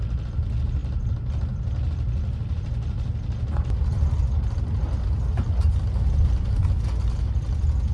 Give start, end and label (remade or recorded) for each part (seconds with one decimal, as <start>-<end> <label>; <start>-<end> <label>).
0.0-7.9 recorded